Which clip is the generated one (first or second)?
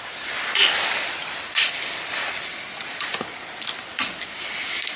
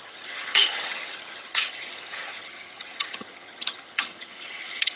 second